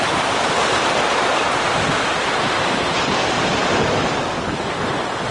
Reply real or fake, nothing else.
real